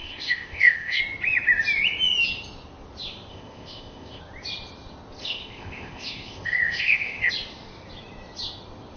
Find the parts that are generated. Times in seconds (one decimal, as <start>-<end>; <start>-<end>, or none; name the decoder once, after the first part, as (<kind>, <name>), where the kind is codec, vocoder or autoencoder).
0.0-1.0 (codec, ZipCodec); 3.3-4.2; 5.2-7.3